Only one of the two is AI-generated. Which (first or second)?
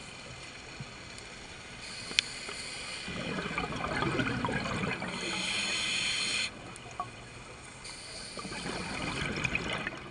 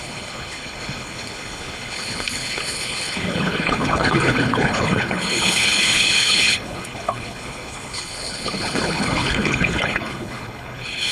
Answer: second